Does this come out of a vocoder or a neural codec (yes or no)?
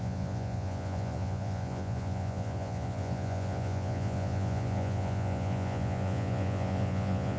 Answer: yes